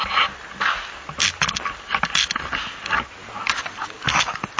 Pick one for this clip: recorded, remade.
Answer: recorded